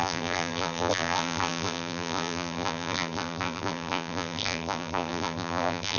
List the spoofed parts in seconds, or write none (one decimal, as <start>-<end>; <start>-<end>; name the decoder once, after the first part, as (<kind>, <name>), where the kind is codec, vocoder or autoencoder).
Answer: 0.0-6.0 (vocoder, BigVGAN v2)